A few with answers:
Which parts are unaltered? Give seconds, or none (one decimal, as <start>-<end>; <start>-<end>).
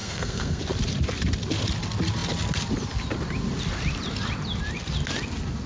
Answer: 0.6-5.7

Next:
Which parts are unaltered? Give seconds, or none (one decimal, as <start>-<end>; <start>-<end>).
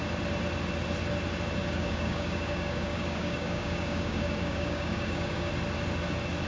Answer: 0.0-1.6; 5.5-6.5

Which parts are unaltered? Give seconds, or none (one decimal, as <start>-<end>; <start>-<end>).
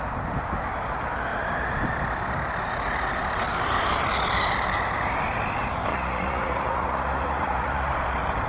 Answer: 0.0-5.9; 7.9-8.5